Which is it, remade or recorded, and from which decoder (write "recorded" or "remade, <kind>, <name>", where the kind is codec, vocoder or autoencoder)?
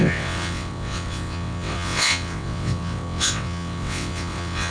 remade, vocoder, WaveNeXt